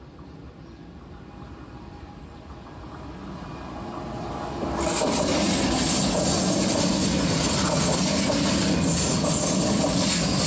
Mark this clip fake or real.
real